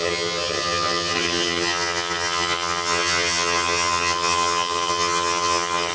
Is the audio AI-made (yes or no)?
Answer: yes